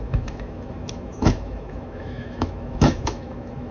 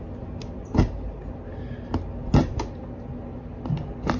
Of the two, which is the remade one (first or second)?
first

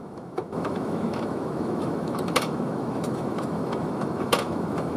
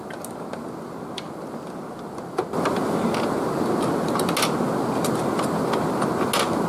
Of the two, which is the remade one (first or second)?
first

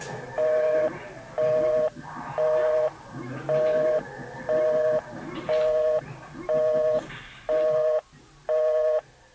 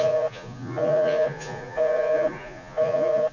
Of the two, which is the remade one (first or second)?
second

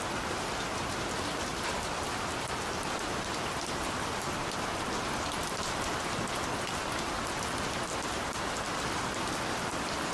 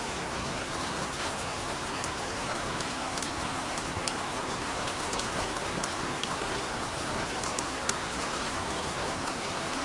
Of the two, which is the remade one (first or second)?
second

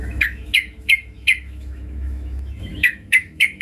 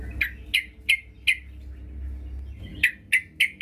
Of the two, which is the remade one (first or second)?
first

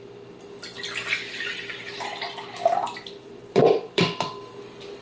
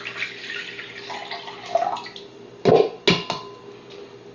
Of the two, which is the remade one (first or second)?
first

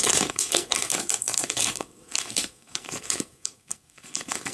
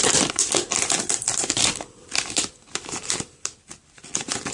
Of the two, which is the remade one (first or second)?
first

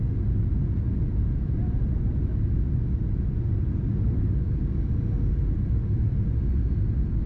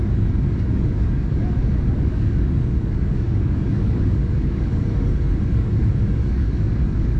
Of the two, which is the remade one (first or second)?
second